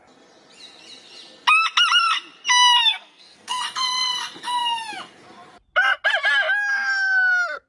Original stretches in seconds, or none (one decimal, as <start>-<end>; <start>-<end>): 0.0-2.9; 3.6-6.7; 7.3-7.7